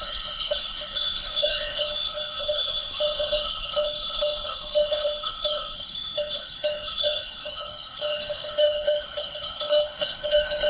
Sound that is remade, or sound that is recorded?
remade